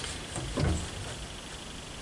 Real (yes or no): yes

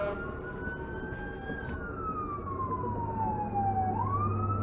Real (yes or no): yes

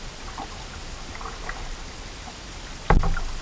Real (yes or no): yes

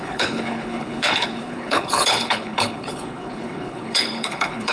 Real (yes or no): no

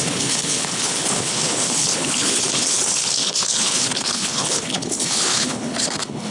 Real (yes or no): no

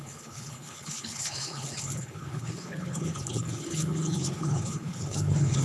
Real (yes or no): no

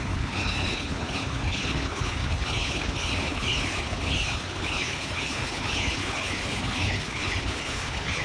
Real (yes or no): no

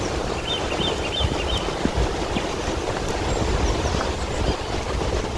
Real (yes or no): yes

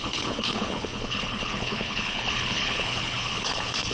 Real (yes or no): no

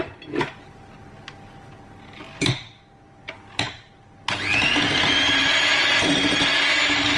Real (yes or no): yes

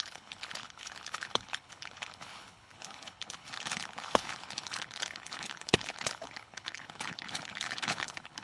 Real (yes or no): no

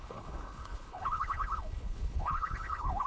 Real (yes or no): no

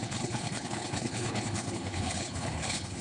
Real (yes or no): no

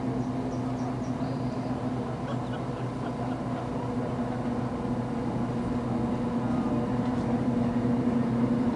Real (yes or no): yes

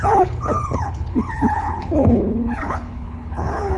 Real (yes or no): no